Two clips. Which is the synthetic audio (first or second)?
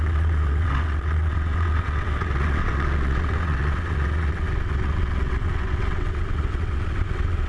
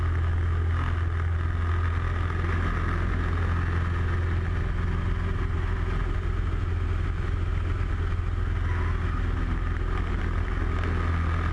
first